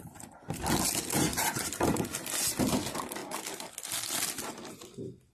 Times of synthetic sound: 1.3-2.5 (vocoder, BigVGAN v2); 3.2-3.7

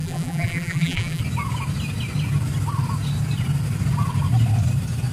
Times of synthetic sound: 0.0-1.2 (vocoder, BigVGAN v2)

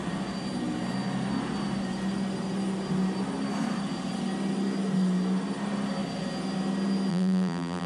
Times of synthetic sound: 7.1-7.9 (vocoder, BigVGAN v2)